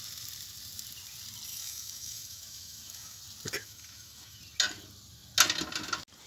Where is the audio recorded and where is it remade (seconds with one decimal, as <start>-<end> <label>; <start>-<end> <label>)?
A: 0.0-1.5 recorded; 1.5-3.2 remade; 3.2-3.6 recorded; 3.6-4.4 remade; 4.4-6.3 recorded